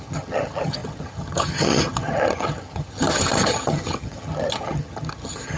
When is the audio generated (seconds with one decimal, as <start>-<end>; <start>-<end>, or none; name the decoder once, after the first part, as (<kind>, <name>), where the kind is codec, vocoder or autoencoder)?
0.0-5.6 (vocoder, HiFi-GAN)